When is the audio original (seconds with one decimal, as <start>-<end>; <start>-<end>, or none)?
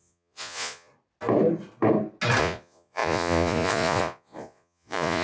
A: 0.9-2.4